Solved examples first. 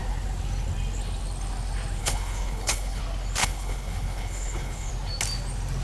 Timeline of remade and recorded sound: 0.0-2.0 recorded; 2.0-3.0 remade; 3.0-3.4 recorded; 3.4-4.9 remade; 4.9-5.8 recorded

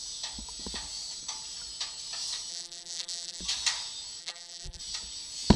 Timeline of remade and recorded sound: 0.0-2.5 recorded; 2.5-3.4 remade; 3.4-4.2 recorded; 4.2-4.8 remade; 4.8-5.6 recorded

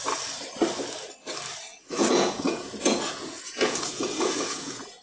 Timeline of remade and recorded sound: 0.0-1.7 recorded; 1.7-5.0 remade

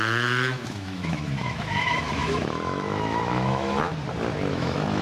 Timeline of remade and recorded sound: 0.0-3.9 remade; 3.9-4.5 recorded; 4.5-5.0 remade

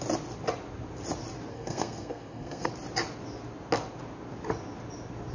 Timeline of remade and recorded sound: 0.0-1.5 recorded; 1.5-2.7 remade; 2.7-5.3 recorded

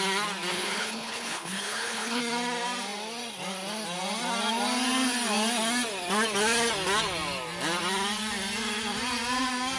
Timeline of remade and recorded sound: 0.0-0.5 recorded; 0.5-2.2 remade; 2.2-9.8 recorded